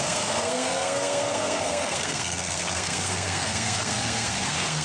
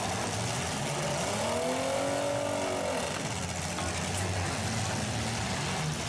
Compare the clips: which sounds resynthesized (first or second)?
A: first